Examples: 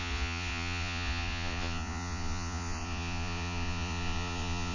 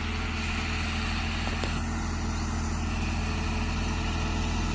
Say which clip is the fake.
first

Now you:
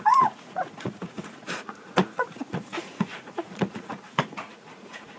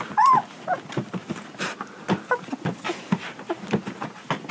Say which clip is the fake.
first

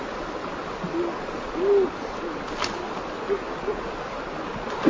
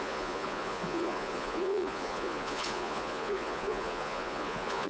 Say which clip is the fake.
second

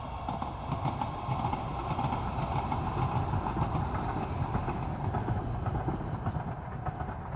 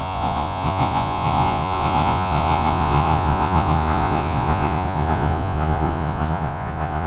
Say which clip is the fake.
second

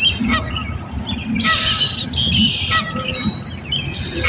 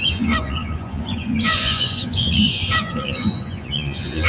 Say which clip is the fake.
second